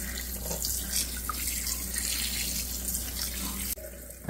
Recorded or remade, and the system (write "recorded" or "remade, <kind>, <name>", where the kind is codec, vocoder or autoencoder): recorded